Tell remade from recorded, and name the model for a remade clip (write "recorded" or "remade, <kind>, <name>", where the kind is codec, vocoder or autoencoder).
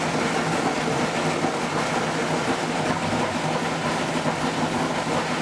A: recorded